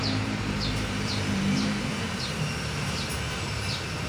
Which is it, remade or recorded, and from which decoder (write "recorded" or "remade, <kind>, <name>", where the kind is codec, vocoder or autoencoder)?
remade, vocoder, BigVGAN v2